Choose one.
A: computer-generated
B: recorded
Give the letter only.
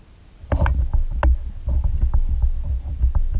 B